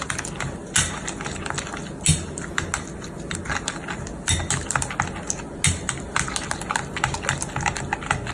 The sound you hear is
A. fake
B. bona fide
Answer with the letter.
B